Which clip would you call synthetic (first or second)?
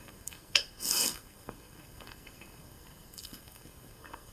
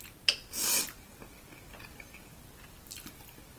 first